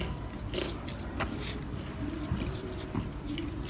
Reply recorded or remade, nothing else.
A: recorded